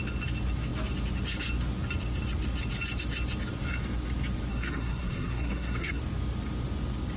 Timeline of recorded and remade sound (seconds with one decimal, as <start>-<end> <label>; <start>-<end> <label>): 0.0-4.5 recorded; 4.5-6.0 remade; 6.0-7.2 recorded